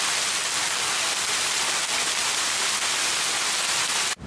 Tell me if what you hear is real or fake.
real